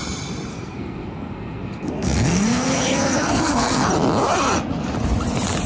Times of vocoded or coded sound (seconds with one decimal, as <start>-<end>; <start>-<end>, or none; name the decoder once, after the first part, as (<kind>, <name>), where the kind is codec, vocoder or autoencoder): 0.5-3.9 (codec, SNAC)